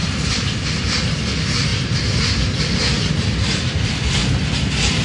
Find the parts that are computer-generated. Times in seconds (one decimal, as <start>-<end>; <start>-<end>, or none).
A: 0.0-1.7; 2.7-4.2